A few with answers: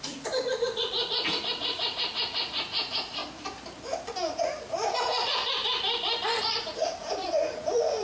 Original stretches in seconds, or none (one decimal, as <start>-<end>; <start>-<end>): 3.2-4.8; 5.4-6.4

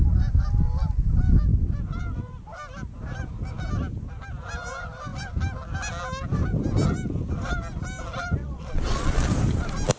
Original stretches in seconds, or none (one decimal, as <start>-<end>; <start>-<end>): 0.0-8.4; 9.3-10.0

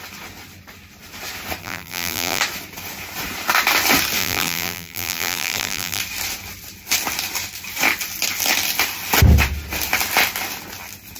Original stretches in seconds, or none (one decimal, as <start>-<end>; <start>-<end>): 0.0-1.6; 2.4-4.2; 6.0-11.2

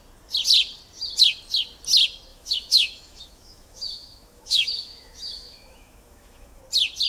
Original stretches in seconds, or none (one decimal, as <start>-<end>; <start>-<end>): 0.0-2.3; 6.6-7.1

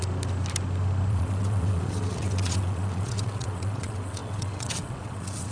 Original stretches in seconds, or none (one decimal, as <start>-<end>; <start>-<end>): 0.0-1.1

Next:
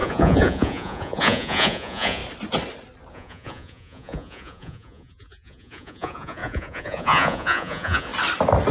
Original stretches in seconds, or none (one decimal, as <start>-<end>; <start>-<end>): 2.2-3.1; 8.1-8.7

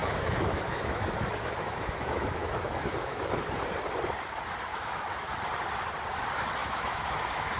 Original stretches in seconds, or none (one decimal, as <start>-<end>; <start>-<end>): 3.3-4.7; 5.3-6.6

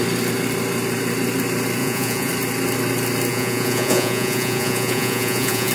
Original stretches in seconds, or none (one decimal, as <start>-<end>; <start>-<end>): 0.0-1.8; 2.3-3.3